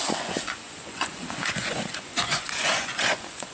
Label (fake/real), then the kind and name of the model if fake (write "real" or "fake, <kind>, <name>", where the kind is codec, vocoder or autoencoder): fake, vocoder, Vocos